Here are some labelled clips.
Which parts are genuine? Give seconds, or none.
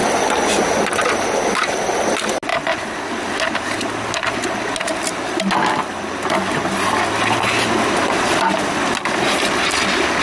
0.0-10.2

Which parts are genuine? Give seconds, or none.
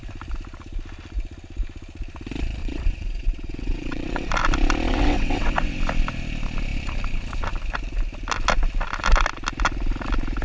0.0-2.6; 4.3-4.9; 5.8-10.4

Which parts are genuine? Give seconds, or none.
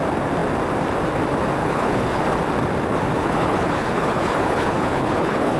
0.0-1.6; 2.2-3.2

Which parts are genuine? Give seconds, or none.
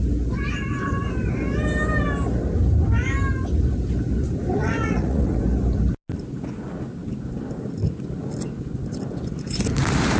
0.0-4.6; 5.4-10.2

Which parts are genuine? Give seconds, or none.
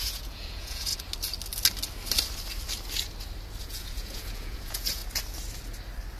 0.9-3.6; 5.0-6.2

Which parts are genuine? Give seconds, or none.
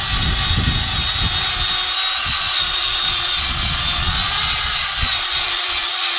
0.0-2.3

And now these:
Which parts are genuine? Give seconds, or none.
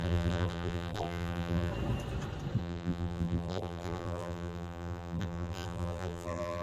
1.7-2.6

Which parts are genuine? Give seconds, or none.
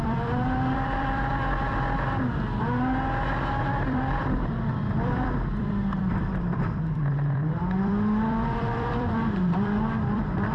1.3-3.8